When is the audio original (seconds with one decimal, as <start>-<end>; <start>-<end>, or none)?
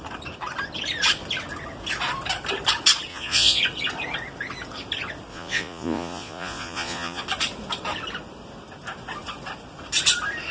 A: 0.0-3.1; 3.6-5.3; 7.2-10.5